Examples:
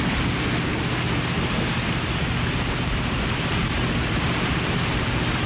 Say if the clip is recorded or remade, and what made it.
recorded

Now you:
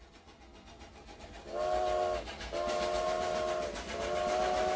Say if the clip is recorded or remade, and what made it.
recorded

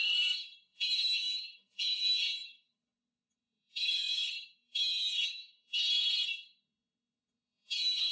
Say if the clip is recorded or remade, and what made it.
remade, codec, SNAC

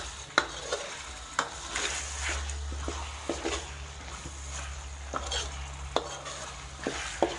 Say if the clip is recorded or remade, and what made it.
recorded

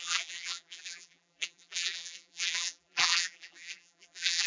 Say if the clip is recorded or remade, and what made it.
remade, vocoder, BigVGAN v2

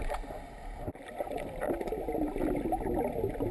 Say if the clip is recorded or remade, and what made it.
recorded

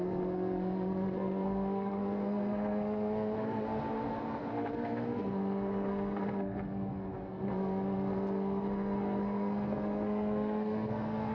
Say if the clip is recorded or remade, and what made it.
remade, codec, SNAC